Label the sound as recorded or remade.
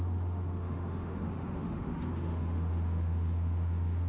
remade